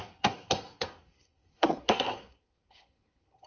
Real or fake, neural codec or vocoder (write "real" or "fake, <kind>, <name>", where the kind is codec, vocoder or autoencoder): fake, codec, SNAC